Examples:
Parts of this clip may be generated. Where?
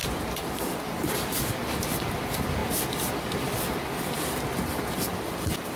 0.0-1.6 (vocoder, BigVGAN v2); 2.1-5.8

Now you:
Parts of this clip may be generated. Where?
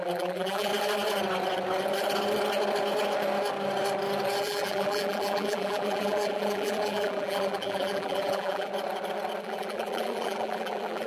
0.0-0.7 (vocoder, BigVGAN v2); 4.4-8.7; 9.4-11.1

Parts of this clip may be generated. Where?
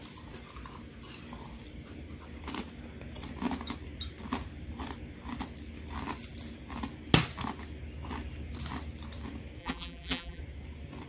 9.6-10.4 (vocoder, BigVGAN v2)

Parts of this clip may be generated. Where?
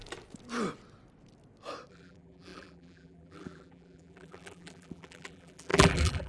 1.9-6.3 (vocoder, BigVGAN v2)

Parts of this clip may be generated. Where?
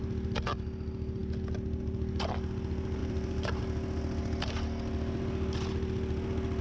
3.0-3.6 (vocoder, BigVGAN v2)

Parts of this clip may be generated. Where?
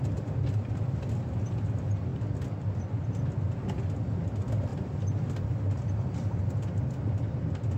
none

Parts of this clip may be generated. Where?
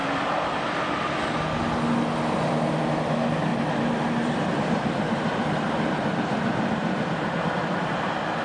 0.0-0.6 (vocoder, BigVGAN v2); 3.5-8.4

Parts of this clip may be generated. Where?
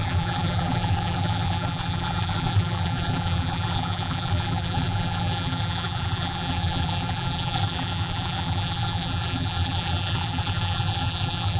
0.0-11.6 (vocoder, BigVGAN v2)